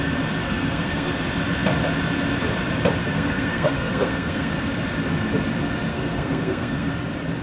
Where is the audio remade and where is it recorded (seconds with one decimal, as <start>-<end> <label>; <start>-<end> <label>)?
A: 0.0-0.4 recorded; 0.4-1.1 remade; 1.1-3.0 recorded; 3.0-4.5 remade; 4.5-5.9 recorded; 5.9-6.9 remade; 6.9-7.4 recorded